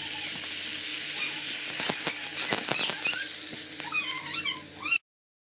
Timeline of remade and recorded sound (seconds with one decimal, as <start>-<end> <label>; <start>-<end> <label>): 0.0-5.5 recorded